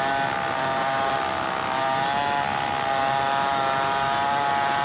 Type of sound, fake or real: real